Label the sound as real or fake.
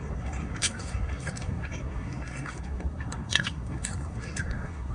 fake